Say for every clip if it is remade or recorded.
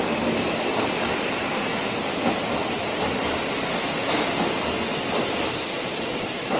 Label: recorded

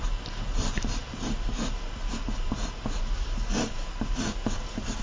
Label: remade